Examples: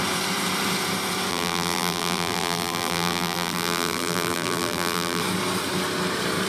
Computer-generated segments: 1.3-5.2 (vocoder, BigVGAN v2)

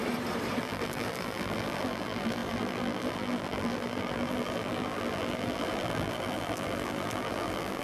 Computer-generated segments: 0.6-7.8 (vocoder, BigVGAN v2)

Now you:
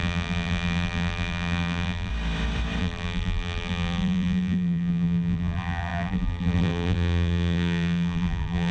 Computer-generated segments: 0.0-2.1 (vocoder, BigVGAN v2); 2.8-8.7

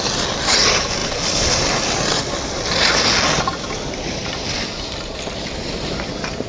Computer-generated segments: 1.0-2.3 (vocoder, BigVGAN v2); 4.2-5.5

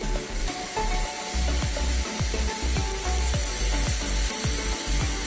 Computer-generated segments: none

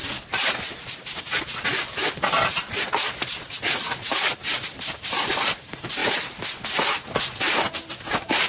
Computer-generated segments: 1.2-3.7 (vocoder, BigVGAN v2); 4.3-6.0; 7.0-8.5